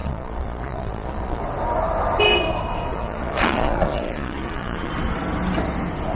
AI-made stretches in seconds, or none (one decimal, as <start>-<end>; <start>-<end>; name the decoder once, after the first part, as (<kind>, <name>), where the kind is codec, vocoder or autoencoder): 0.0-1.4 (vocoder, Vocos); 2.9-4.9

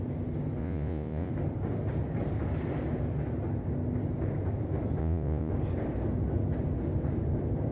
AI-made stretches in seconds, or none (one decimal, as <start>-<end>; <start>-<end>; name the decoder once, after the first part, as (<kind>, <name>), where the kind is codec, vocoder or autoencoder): 0.6-1.3 (vocoder, Vocos); 5.0-5.5

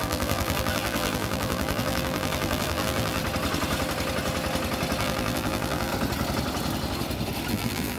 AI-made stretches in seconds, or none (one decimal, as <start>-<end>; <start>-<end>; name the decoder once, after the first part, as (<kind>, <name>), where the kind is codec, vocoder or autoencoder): 0.0-3.2 (vocoder, BigVGAN v2); 5.0-5.9; 7.5-8.0

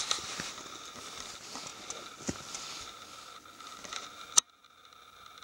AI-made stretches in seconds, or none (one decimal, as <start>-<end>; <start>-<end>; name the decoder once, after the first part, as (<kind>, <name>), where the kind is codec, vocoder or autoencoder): none

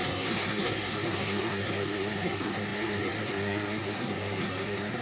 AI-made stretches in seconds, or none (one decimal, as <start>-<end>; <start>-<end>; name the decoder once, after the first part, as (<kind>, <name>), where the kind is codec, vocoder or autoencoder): 0.0-5.0 (codec, SNAC)

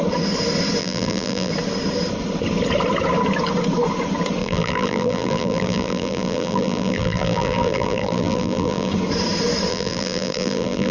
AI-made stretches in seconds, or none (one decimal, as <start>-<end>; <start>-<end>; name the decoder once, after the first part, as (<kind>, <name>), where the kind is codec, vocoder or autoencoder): 0.8-1.5 (vocoder, BigVGAN v2); 4.4-8.9; 9.7-10.9

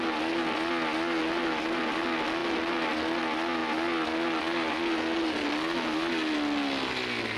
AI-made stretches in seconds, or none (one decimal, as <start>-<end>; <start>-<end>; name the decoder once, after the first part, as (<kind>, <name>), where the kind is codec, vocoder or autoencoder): none

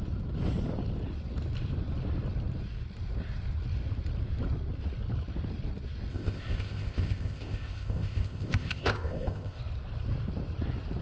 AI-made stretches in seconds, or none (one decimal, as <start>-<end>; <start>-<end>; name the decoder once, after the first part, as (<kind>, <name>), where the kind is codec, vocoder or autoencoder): 6.1-9.6 (codec, ZipCodec)